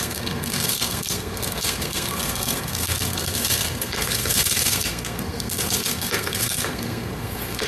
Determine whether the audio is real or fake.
fake